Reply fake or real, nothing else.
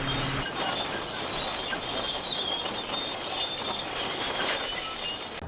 real